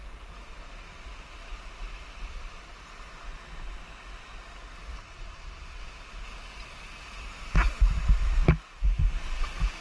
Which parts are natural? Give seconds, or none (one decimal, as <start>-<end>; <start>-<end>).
0.0-5.0; 5.8-9.8